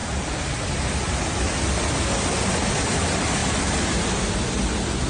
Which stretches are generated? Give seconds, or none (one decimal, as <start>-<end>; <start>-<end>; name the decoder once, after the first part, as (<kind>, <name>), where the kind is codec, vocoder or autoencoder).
none